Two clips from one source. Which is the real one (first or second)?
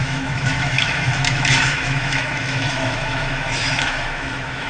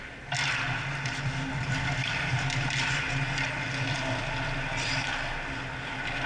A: second